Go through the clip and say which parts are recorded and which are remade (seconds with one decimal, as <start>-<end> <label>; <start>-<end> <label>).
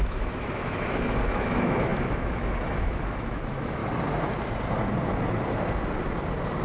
0.0-3.8 remade; 3.8-6.6 recorded